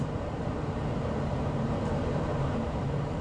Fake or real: fake